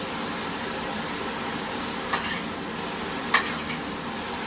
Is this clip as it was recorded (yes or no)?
yes